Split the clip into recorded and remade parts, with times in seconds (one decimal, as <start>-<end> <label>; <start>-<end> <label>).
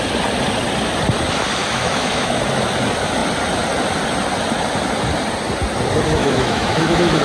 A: 0.0-1.6 recorded; 1.6-2.4 remade; 2.4-6.2 recorded; 6.2-7.2 remade